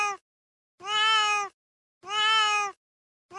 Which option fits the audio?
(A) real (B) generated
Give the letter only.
A